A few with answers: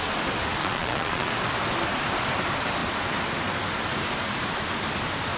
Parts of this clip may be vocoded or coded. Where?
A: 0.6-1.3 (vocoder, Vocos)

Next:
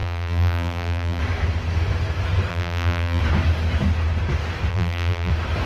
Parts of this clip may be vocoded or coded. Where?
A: 0.0-1.2 (vocoder, BigVGAN v2); 2.5-3.2; 4.7-5.3

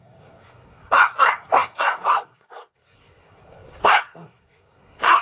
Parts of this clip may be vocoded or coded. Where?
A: 0.0-5.2 (codec, SNAC)

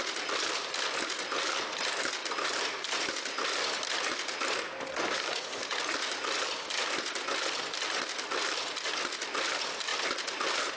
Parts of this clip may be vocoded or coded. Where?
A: none

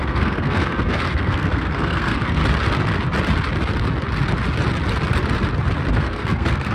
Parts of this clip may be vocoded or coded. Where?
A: 0.0-2.4 (codec, SNAC); 5.9-6.7

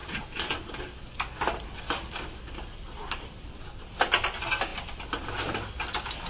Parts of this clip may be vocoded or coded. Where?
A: none

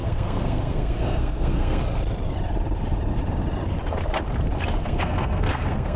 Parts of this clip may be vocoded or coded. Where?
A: 0.0-1.8 (codec, SNAC); 4.8-6.0